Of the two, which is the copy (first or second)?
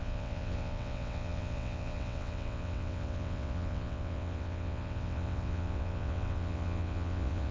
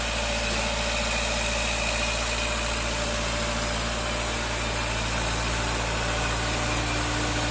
first